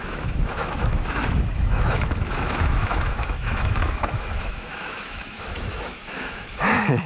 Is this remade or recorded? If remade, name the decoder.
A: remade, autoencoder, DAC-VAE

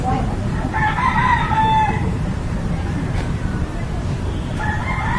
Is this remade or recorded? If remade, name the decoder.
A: remade, vocoder, BigVGAN v2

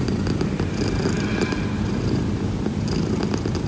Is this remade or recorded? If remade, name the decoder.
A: recorded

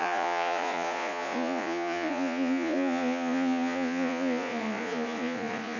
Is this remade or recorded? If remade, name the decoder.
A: remade, vocoder, Vocos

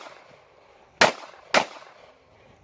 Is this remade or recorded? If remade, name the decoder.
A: recorded